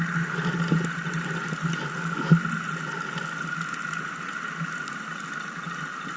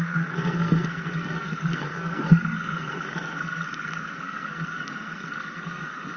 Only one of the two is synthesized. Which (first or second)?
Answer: second